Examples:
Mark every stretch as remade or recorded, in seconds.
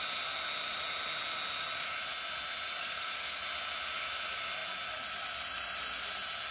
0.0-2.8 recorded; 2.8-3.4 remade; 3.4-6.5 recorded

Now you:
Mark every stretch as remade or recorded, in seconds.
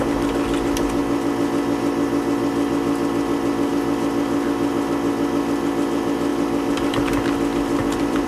0.0-6.3 recorded; 6.3-8.3 remade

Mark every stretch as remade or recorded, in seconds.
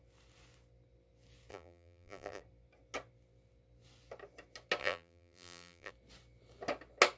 0.0-1.5 recorded; 1.5-2.4 remade; 2.4-4.8 recorded; 4.8-5.9 remade; 5.9-7.2 recorded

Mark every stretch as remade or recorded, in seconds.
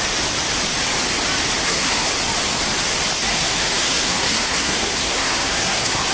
0.0-1.6 recorded; 1.6-2.1 remade; 2.1-3.3 recorded; 3.3-6.1 remade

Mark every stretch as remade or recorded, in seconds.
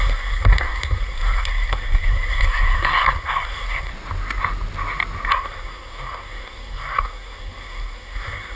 0.0-3.9 remade; 3.9-5.3 recorded; 5.3-8.6 remade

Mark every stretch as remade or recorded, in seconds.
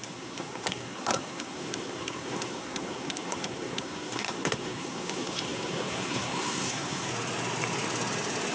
0.0-7.1 remade; 7.1-8.5 recorded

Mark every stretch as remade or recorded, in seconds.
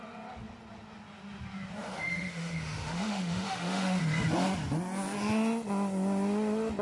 0.0-1.8 recorded; 1.8-4.0 remade; 4.0-6.8 recorded